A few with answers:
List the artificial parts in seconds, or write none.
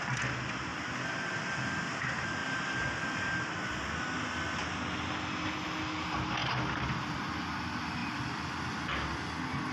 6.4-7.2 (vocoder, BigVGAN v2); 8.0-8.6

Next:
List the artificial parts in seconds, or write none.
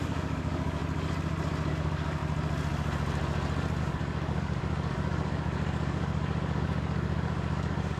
0.0-0.8 (codec, DAC); 1.7-2.2; 3.8-8.0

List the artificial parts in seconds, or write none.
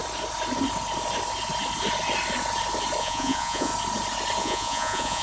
3.0-3.7 (vocoder, Vocos); 4.4-5.2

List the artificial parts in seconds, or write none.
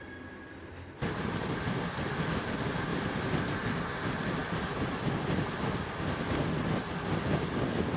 none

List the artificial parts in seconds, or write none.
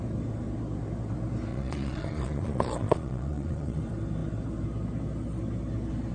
1.5-3.8 (vocoder, Vocos)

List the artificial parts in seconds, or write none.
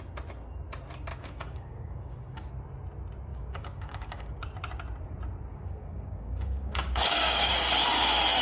1.1-2.5 (codec, DAC); 3.3-4.4; 5.5-7.5